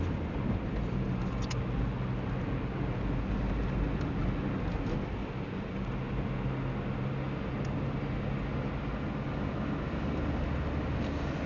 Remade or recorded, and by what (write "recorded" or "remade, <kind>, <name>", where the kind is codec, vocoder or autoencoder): recorded